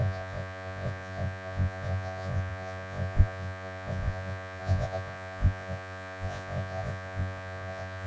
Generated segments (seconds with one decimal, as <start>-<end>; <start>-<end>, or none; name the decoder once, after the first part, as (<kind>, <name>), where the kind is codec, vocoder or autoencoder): 0.0-8.1 (vocoder, Vocos)